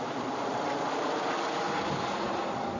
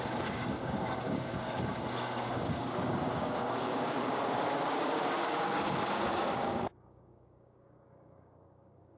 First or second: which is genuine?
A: first